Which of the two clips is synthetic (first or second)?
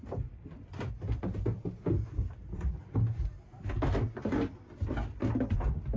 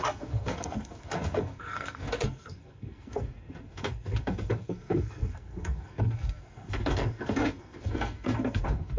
second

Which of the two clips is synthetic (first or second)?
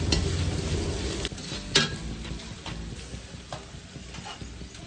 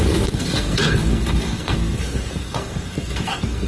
second